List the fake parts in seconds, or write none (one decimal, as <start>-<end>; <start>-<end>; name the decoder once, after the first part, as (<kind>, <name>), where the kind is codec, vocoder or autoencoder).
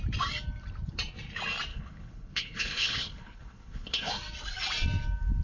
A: 1.7-4.1 (codec, HILCodec)